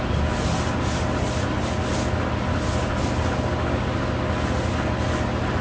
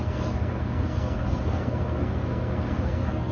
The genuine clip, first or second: first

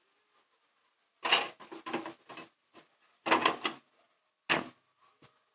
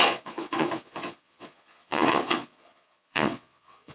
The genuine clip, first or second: first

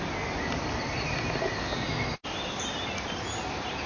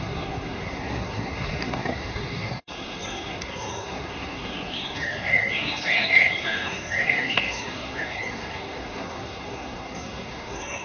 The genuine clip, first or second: first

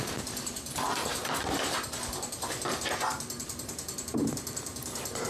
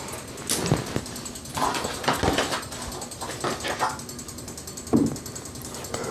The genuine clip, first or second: second